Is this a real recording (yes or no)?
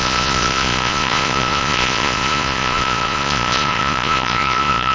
no